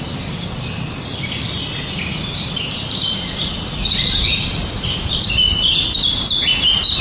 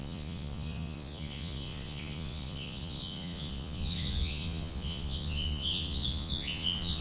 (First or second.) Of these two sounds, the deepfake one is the second